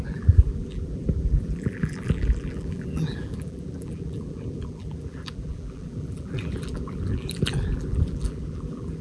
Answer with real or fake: fake